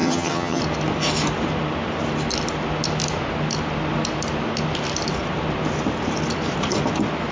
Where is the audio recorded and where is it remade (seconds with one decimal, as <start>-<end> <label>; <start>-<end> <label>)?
0.0-0.6 remade; 0.6-7.3 recorded